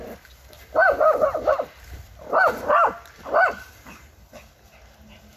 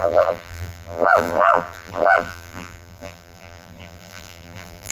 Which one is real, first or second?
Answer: first